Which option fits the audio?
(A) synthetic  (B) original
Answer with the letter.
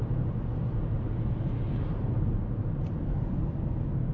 B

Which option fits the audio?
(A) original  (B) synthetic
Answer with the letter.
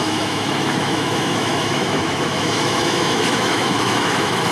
B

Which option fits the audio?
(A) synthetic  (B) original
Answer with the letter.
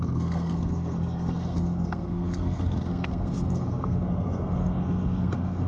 A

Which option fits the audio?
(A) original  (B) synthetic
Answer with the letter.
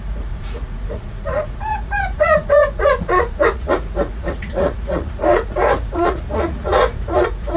B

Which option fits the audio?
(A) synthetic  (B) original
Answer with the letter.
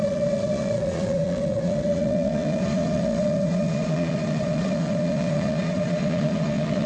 A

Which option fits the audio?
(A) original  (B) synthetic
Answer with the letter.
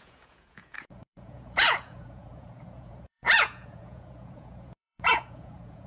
B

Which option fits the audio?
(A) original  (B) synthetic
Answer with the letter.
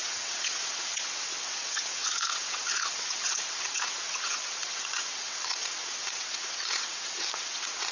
B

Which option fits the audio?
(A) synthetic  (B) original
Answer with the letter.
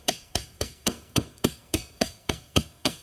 A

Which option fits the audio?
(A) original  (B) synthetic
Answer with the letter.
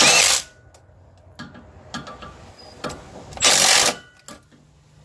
A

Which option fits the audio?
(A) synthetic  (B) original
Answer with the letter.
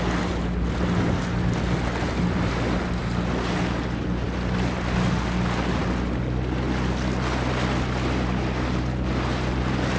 B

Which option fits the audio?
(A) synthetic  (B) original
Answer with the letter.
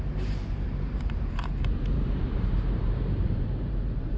A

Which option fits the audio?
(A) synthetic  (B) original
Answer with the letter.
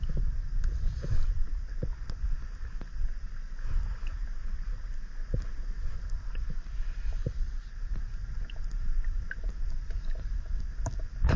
B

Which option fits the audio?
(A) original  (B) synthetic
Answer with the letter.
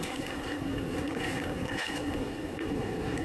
B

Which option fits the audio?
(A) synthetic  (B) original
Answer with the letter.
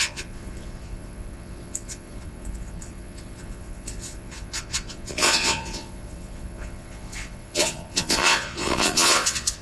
A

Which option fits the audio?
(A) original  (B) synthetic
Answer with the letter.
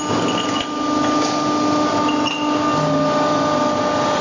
A